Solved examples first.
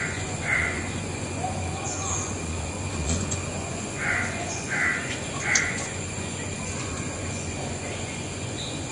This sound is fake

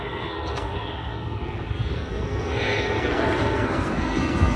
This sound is fake